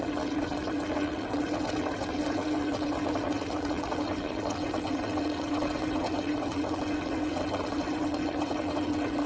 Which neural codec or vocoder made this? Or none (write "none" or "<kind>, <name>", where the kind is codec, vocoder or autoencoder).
vocoder, WaveNeXt